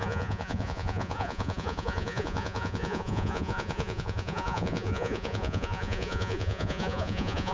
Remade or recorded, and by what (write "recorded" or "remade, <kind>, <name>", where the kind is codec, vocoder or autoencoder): remade, vocoder, Vocos